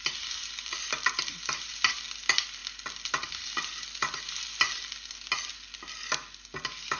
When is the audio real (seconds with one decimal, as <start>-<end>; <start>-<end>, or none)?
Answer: 0.0-7.0